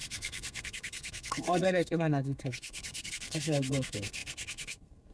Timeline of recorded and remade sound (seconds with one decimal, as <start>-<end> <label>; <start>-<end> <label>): 0.0-5.1 remade